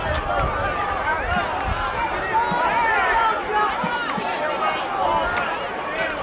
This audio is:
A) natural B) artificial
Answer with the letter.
A